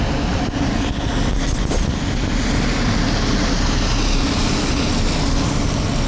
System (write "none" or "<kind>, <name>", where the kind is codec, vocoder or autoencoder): none